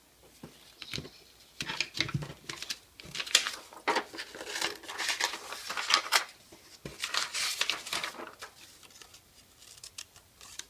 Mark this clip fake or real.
real